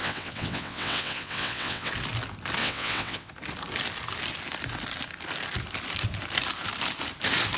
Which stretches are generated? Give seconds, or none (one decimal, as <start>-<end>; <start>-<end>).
0.0-1.9; 2.6-3.3